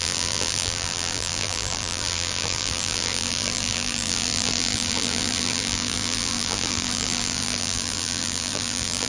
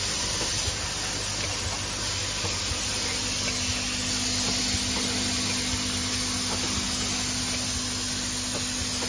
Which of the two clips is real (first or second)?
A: second